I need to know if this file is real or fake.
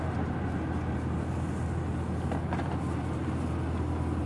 real